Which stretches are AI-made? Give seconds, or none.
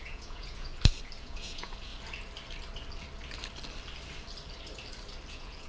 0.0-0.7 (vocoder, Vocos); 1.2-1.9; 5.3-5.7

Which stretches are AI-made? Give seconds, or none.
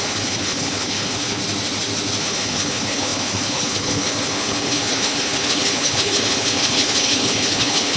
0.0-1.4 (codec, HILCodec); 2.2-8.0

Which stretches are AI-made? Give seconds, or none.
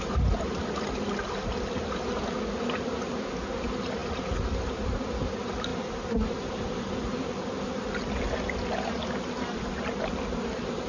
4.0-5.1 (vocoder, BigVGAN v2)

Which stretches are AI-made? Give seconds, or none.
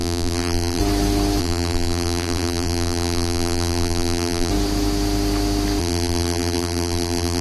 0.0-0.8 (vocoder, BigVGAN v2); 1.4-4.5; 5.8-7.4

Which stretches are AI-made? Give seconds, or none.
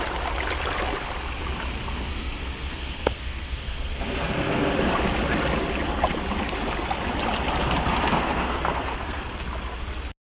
2.1-4.7 (codec, SNAC); 8.1-9.4